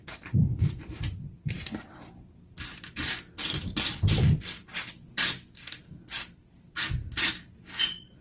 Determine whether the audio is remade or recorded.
recorded